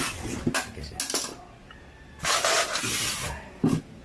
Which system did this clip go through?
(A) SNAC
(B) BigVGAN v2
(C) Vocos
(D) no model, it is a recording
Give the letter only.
D